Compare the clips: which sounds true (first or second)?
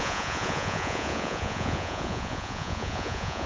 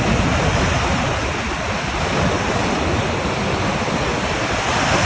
second